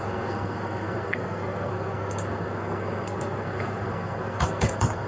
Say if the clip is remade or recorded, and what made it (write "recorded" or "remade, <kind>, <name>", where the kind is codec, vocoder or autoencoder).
remade, codec, SNAC